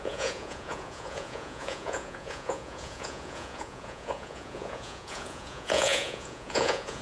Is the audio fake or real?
fake